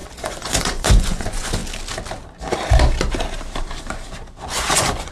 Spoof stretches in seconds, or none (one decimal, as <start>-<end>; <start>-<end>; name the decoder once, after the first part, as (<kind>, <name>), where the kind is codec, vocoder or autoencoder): 0.0-1.6 (vocoder, Vocos); 4.4-5.1